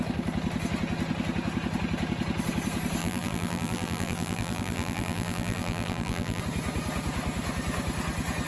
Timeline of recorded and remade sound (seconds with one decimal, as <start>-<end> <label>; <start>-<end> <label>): 0.0-3.0 recorded; 3.0-6.4 remade; 6.4-8.5 recorded